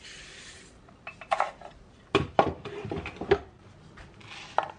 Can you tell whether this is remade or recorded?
recorded